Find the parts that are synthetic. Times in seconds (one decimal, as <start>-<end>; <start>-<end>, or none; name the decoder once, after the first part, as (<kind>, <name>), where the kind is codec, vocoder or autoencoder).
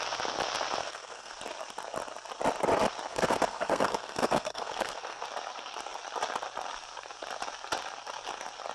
0.8-1.3 (codec, SNAC); 3.1-5.2